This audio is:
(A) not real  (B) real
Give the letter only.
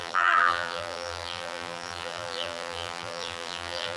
A